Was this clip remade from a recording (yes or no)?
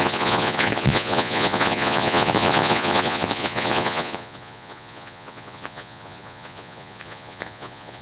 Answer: yes